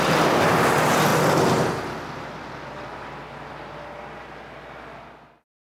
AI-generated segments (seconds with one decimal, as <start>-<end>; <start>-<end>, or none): none